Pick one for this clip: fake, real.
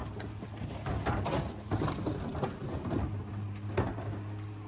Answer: real